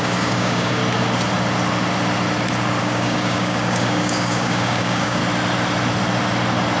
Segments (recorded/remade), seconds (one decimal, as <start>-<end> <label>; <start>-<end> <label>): 0.0-0.8 remade; 0.8-2.8 recorded; 2.8-5.2 remade; 5.2-6.8 recorded